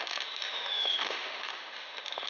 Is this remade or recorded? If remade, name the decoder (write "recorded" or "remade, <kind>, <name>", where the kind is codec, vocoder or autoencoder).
remade, autoencoder, DAC-VAE